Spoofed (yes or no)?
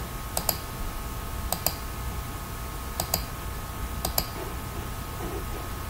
no